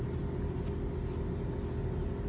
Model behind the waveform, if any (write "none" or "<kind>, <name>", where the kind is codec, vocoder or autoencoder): none